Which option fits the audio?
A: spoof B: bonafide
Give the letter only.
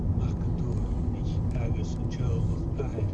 B